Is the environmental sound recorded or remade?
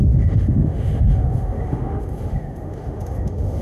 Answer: remade